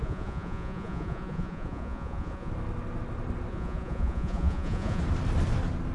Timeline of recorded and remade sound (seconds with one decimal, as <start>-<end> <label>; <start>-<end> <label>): 0.0-2.5 remade; 2.5-3.5 recorded; 3.5-5.0 remade; 5.0-5.9 recorded

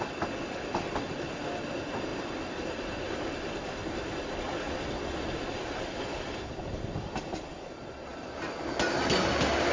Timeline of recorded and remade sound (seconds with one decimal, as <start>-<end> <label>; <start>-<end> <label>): 0.0-9.7 recorded

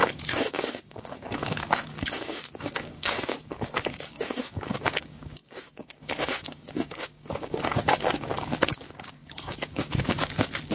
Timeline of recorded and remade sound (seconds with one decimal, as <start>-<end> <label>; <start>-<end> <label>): 0.0-10.7 remade

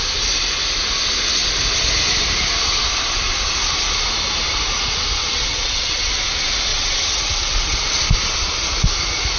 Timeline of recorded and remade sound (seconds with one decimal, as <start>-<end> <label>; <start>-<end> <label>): 0.0-5.2 recorded; 5.2-6.1 remade; 6.1-6.7 recorded; 6.7-8.0 remade; 8.0-9.4 recorded

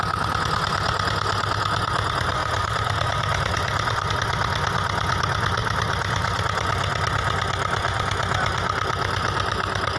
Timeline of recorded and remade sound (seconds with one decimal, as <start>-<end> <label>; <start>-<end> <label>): 0.0-2.4 recorded; 2.4-4.1 remade; 4.1-5.6 recorded; 5.6-6.4 remade; 6.4-10.0 recorded

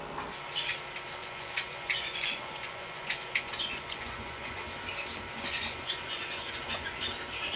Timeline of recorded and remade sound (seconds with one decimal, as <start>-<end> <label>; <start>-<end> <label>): 0.0-1.2 recorded; 1.2-4.6 remade; 4.6-5.3 recorded; 5.3-7.0 remade; 7.0-7.6 recorded

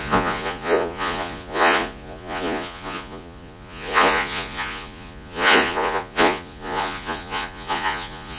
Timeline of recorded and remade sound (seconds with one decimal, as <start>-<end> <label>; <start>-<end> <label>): 0.0-8.4 remade

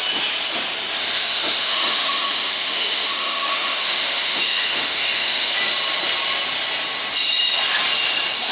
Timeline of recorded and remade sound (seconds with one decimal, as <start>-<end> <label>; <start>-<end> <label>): 0.0-1.0 recorded; 1.0-5.5 remade; 5.5-8.5 recorded